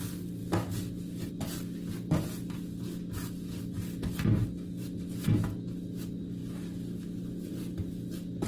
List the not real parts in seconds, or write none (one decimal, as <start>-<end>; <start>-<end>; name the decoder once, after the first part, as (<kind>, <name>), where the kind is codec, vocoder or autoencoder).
none